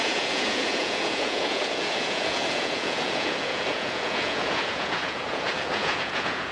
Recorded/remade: remade